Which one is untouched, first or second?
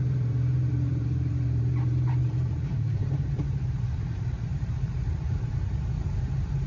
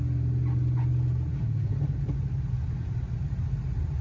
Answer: second